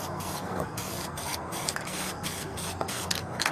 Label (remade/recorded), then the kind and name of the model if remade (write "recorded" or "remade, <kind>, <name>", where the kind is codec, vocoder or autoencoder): remade, codec, SNAC